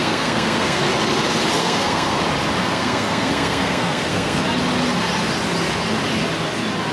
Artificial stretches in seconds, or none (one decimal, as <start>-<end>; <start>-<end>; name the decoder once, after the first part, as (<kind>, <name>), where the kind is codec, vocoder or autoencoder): 0.0-0.8 (codec, SNAC); 1.6-2.2; 2.6-4.4